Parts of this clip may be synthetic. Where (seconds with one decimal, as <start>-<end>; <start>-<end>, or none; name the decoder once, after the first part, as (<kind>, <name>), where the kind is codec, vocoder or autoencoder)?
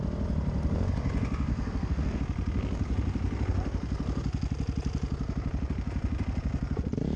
1.5-2.2 (codec, SNAC)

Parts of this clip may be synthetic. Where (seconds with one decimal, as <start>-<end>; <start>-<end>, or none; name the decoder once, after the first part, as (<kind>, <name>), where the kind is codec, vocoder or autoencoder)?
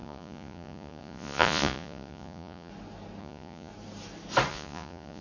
0.0-2.7 (vocoder, Vocos); 3.2-3.7; 4.5-5.2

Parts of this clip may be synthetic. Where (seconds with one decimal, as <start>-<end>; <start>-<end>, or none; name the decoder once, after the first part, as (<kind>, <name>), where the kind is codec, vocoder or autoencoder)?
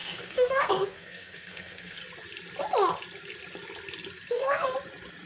0.0-2.0 (codec, SNAC); 4.3-4.7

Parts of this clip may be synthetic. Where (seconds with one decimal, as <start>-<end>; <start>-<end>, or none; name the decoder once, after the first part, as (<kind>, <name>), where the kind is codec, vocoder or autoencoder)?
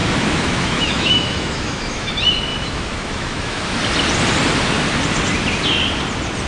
0.0-2.1 (autoencoder, DAC-VAE); 2.5-3.8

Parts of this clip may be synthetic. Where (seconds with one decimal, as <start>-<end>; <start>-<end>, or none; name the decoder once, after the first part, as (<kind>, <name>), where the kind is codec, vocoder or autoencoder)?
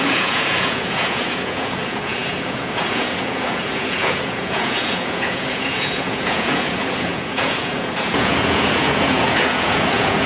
0.0-10.3 (vocoder, Vocos)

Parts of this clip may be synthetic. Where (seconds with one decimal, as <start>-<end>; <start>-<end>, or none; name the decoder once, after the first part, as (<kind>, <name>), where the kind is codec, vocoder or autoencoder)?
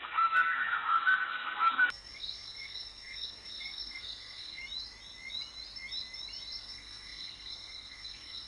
0.0-4.6 (codec, SNAC); 6.6-8.5